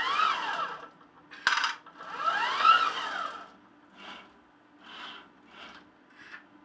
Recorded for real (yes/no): yes